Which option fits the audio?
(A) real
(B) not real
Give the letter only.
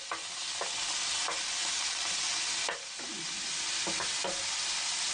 A